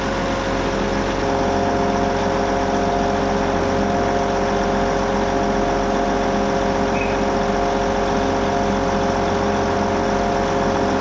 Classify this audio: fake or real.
real